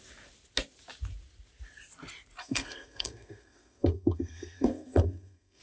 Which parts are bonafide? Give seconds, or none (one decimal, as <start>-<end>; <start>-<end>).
0.0-2.4